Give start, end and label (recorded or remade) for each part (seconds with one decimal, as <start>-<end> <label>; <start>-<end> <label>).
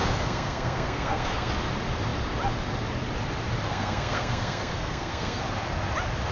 0.0-1.5 remade; 1.5-3.7 recorded; 3.7-5.4 remade; 5.4-6.3 recorded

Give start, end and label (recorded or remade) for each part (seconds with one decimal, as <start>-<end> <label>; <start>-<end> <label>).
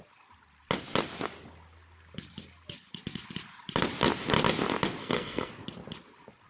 0.0-5.0 recorded; 5.0-5.5 remade; 5.5-6.5 recorded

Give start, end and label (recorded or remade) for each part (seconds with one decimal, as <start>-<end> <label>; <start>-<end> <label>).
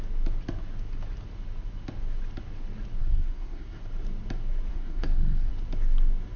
0.0-3.0 recorded; 3.0-3.8 remade; 3.8-4.7 recorded; 4.7-5.5 remade; 5.5-6.4 recorded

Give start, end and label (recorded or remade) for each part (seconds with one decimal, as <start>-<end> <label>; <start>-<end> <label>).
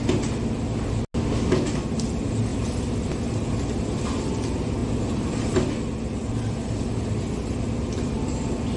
0.0-8.8 recorded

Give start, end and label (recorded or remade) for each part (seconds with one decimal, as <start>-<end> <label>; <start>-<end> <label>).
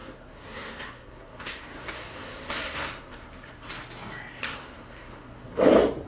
0.0-3.7 remade; 3.7-4.3 recorded; 4.3-5.6 remade; 5.6-6.1 recorded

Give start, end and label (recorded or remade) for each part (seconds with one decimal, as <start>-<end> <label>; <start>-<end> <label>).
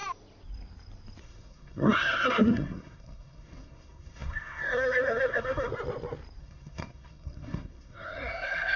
0.0-1.2 recorded; 1.2-5.7 remade; 5.7-6.4 recorded; 6.4-8.8 remade